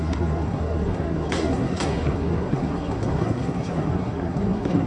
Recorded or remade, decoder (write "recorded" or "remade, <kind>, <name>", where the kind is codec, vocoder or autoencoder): remade, codec, SNAC